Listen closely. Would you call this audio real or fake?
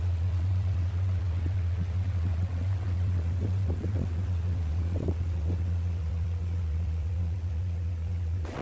fake